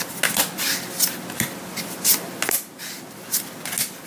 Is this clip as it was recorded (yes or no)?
yes